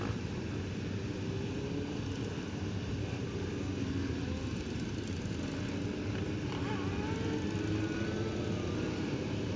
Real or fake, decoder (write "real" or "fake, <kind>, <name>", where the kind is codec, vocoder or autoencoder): real